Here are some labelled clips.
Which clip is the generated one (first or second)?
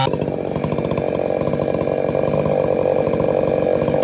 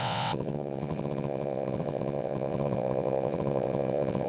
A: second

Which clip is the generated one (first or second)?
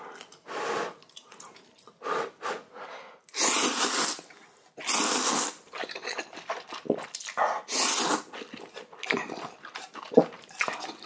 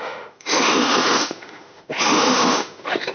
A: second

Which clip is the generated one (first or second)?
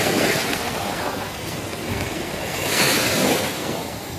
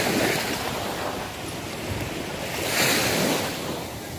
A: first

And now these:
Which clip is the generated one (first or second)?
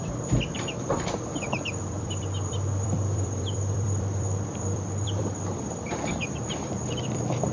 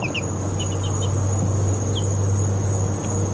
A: first